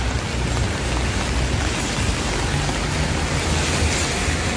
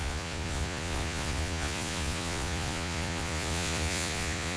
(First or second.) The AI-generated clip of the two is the second